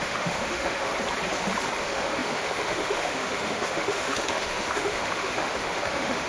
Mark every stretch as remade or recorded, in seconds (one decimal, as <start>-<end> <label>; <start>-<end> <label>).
0.0-0.9 remade; 0.9-1.8 recorded; 1.8-6.3 remade